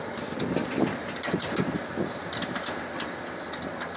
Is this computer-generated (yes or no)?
yes